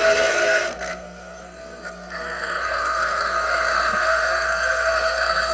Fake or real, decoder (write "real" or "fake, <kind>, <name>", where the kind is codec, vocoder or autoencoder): fake, codec, SNAC